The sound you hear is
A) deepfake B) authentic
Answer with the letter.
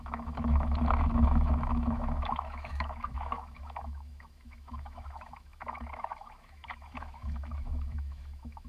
A